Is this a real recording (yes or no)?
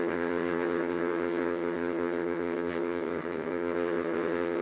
no